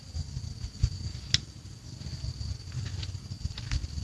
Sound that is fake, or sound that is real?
real